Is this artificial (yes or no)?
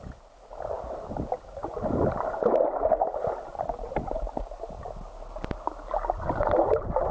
no